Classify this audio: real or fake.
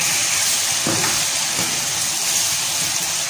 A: real